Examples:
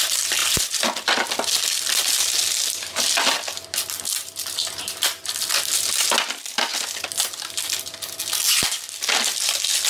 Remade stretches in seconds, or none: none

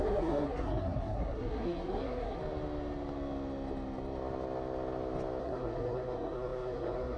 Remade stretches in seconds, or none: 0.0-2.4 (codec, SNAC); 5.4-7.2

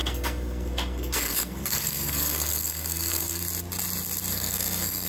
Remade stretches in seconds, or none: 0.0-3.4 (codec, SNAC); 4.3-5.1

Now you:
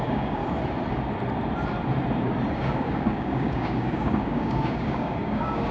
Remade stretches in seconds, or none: 0.0-0.4 (codec, DAC); 2.5-5.7

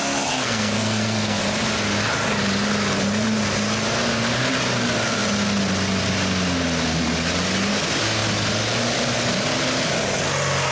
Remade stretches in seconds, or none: 0.0-1.4 (codec, SNAC)